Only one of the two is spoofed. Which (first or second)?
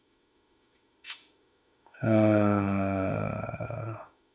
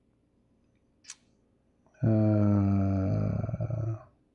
first